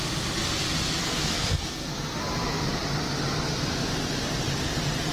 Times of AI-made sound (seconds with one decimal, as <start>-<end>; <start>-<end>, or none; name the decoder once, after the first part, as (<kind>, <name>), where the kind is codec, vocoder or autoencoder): 1.0-2.2 (codec, SNAC)